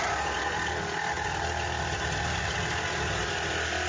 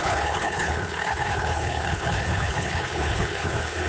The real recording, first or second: first